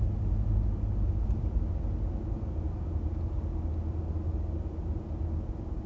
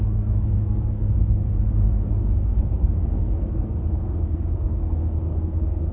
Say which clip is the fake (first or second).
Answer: second